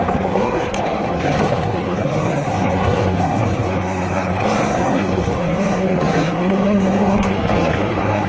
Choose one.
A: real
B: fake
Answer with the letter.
B